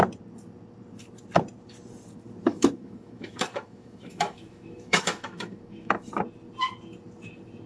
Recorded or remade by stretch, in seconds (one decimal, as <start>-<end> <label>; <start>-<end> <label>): 0.0-2.5 recorded; 2.5-6.1 remade; 6.1-7.7 recorded